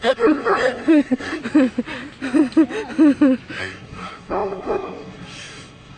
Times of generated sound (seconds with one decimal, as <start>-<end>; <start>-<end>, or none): 0.0-1.4; 3.6-6.0